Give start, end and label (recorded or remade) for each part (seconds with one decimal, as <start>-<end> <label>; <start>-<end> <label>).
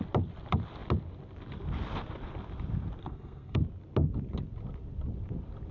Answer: 0.0-3.0 recorded; 3.0-3.6 remade; 3.6-5.7 recorded